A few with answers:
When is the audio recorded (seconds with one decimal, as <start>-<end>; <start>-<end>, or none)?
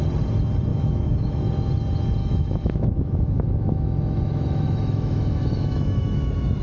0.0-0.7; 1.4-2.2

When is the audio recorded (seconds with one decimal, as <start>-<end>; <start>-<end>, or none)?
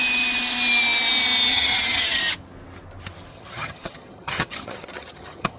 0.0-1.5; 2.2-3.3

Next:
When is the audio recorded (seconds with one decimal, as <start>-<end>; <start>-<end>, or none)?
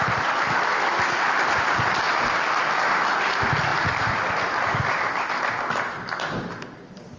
0.0-7.2